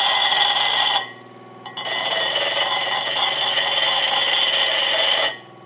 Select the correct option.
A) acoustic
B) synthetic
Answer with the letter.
A